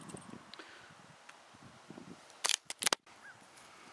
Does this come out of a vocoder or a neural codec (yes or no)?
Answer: no